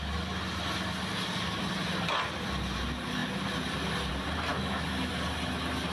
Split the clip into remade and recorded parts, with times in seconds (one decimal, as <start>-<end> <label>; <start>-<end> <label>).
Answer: 0.0-4.5 recorded; 4.5-5.1 remade; 5.1-5.9 recorded